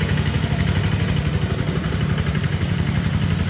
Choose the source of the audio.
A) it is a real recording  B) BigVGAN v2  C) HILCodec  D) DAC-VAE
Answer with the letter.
A